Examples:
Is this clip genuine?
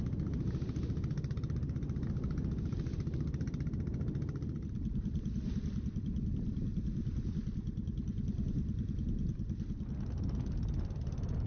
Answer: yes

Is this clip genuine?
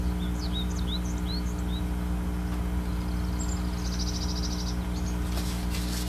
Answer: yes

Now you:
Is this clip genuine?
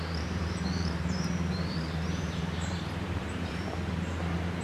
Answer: no